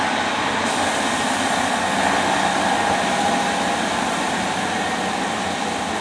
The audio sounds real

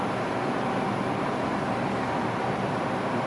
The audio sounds real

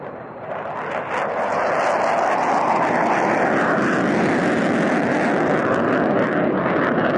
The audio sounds real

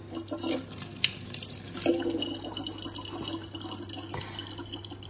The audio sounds real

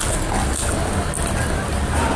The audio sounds real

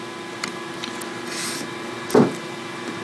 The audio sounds real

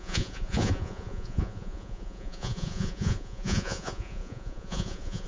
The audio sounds fake